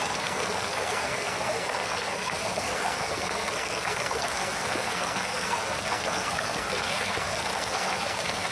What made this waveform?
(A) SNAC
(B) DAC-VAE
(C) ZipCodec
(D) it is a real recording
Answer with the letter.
A